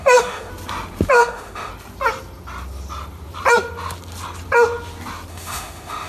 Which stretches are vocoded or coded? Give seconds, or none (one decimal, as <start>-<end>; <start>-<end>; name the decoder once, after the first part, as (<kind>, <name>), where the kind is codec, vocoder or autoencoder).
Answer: 0.0-0.5 (autoencoder, DAC-VAE); 1.1-1.7; 5.3-6.1